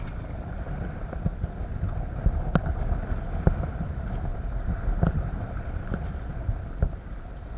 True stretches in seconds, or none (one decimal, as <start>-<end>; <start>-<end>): 0.0-4.3; 5.4-7.6